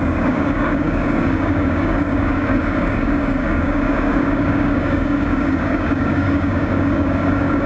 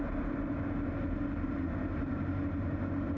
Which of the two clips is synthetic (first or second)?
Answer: first